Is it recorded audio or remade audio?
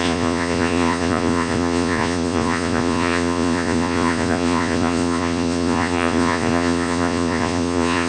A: remade